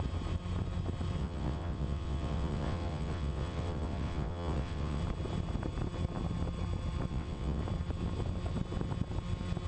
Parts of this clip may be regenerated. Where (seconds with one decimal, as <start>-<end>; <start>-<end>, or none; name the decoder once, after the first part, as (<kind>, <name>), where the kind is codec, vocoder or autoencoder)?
1.2-5.0 (vocoder, WaveNeXt); 7.1-7.6